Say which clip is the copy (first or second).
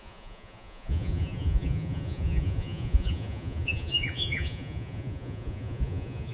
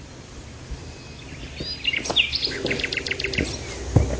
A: first